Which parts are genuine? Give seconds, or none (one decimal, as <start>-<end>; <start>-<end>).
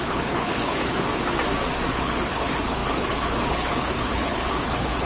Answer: 1.1-1.9